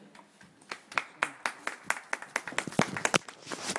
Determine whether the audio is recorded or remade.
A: recorded